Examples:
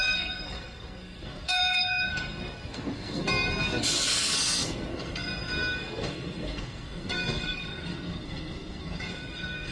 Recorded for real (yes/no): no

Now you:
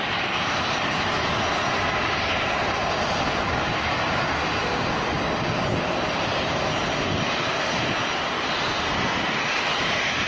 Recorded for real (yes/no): yes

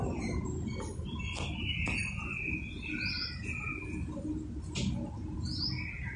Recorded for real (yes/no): yes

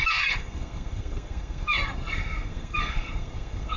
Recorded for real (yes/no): no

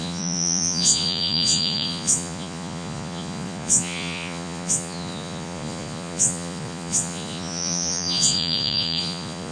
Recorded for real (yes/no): no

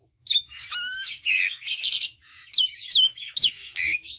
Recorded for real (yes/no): no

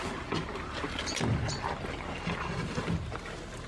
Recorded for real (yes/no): yes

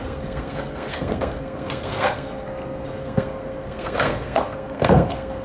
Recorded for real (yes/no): no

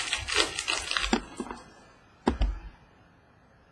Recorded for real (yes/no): yes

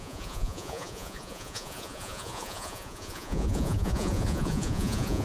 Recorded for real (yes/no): no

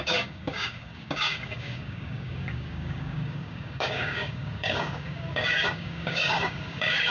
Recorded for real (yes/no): no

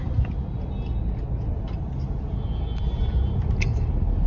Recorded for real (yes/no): yes